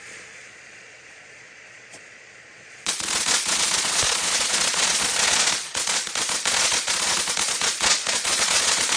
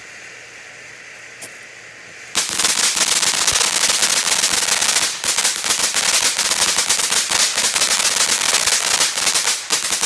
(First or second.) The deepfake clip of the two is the first